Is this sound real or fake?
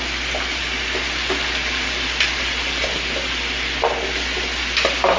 real